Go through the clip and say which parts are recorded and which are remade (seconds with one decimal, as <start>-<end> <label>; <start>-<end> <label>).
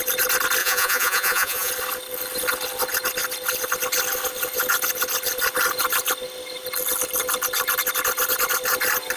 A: 0.0-0.6 recorded; 0.6-1.7 remade; 1.7-9.2 recorded